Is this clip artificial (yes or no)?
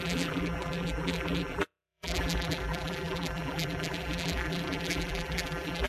yes